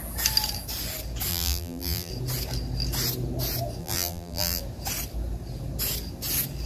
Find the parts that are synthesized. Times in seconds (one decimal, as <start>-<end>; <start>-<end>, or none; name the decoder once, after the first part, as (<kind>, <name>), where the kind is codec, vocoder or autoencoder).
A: 1.3-2.1 (vocoder, BigVGAN v2); 3.8-4.6